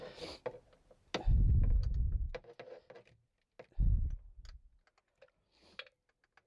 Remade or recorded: recorded